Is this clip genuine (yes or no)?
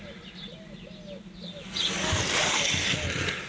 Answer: yes